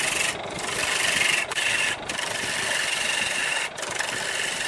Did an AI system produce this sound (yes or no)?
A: no